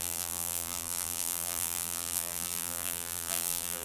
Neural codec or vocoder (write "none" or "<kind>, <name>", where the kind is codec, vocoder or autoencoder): vocoder, BigVGAN v2